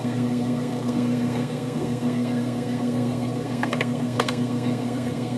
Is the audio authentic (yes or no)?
no